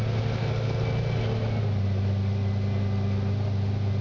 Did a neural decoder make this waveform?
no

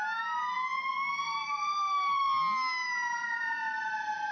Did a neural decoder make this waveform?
no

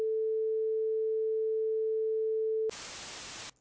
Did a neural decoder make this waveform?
no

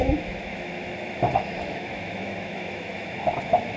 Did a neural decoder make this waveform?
yes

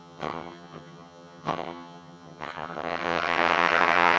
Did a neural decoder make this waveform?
yes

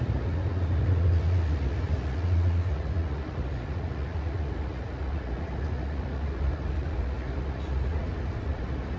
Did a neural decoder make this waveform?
yes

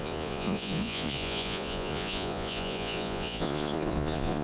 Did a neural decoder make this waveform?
yes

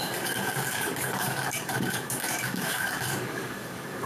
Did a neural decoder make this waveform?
yes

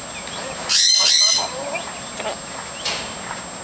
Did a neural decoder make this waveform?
no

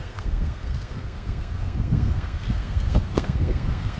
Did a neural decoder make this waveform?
yes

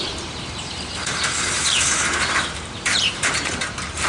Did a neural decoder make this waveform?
yes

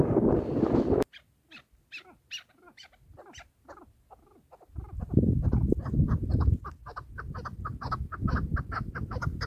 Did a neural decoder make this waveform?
no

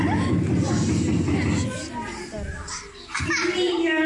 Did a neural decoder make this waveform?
no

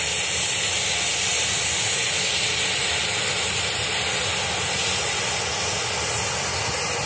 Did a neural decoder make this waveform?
no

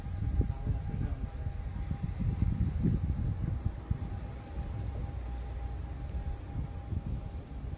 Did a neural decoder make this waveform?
no